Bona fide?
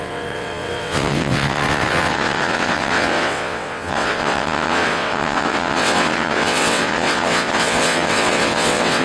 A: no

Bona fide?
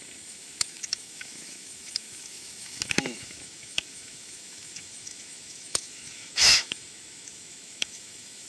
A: no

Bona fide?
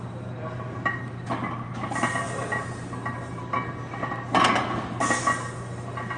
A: yes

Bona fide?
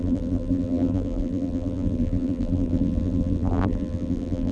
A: no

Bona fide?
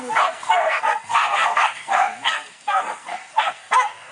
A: no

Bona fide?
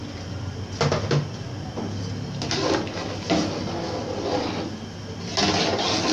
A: yes